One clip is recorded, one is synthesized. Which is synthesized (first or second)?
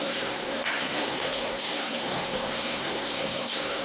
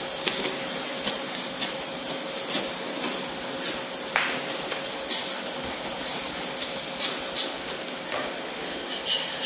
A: first